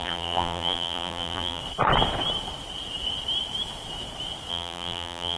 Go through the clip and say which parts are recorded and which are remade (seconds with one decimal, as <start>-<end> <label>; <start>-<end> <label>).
0.0-1.6 remade; 1.6-4.5 recorded; 4.5-5.4 remade